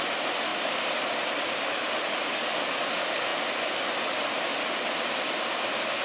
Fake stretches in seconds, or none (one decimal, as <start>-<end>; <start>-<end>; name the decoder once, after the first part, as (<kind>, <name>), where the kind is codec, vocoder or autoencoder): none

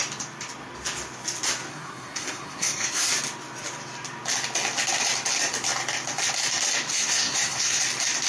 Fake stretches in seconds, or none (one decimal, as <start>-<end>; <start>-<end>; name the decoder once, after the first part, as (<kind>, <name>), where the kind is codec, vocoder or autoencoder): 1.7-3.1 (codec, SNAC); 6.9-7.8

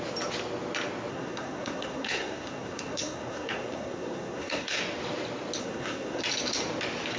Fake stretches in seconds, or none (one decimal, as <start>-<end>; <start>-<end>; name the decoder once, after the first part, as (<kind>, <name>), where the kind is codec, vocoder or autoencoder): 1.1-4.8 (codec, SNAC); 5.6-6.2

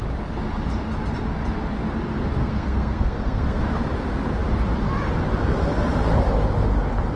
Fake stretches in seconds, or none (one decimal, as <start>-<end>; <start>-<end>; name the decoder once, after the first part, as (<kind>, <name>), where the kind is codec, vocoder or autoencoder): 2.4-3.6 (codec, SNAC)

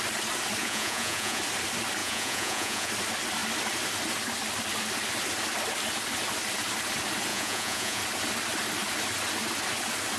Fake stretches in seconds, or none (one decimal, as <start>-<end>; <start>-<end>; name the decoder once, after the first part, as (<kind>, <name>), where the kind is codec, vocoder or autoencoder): 0.6-1.4 (vocoder, Vocos); 2.0-2.9; 7.3-8.0

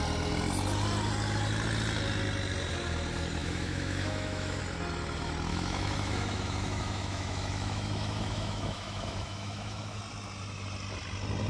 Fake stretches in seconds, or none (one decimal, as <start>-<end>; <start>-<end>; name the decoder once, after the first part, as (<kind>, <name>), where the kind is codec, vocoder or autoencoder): 3.4-4.6 (autoencoder, DAC-VAE); 5.5-10.0